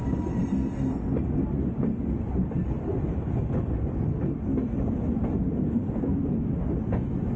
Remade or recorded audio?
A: recorded